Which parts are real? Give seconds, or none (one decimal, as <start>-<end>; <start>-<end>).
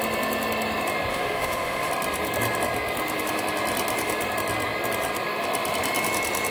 0.0-1.1; 1.9-6.5